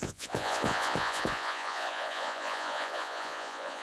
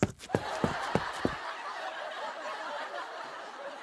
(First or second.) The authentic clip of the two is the second